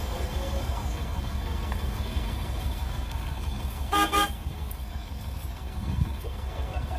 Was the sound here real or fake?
fake